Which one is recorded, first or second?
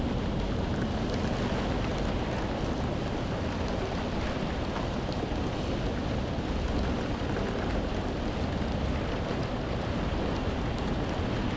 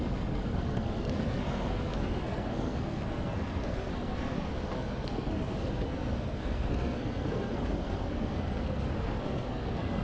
first